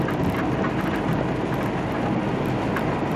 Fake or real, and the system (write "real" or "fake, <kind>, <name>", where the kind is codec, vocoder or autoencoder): real